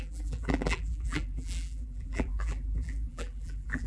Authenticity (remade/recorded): remade